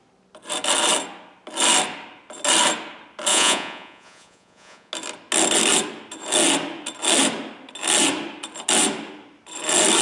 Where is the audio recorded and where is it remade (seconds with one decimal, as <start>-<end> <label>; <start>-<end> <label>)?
0.0-3.3 recorded; 3.3-4.9 remade; 4.9-10.0 recorded